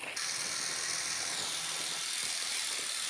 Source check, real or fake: real